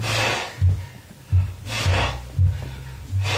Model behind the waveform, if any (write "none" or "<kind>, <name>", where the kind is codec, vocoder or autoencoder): none